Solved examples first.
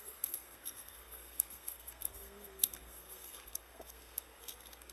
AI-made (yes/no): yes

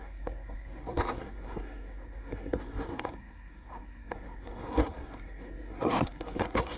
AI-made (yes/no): yes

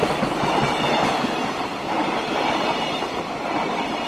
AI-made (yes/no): no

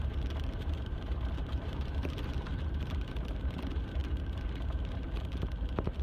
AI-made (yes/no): yes